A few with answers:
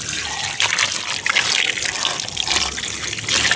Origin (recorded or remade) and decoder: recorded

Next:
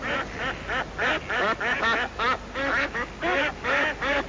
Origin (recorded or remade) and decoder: recorded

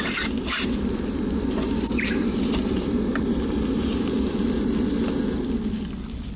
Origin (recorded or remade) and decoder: recorded